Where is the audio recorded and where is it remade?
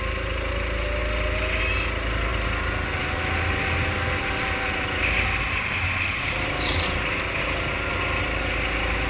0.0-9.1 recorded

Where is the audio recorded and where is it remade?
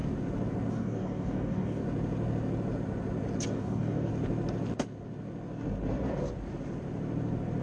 0.0-0.7 recorded; 0.7-1.8 remade; 1.8-3.5 recorded; 3.5-4.1 remade; 4.1-7.6 recorded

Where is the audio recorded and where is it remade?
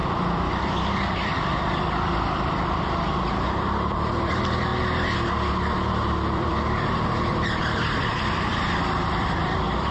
0.0-4.7 remade; 4.7-5.9 recorded; 5.9-9.9 remade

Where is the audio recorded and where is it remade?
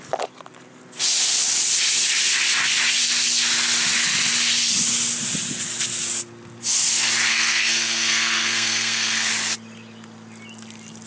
0.0-7.3 recorded; 7.3-9.3 remade; 9.3-11.1 recorded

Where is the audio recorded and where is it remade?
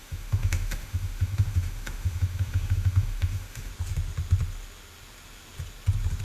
0.0-3.7 remade; 3.7-6.2 recorded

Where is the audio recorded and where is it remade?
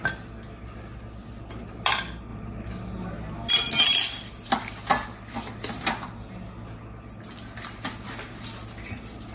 0.0-9.3 recorded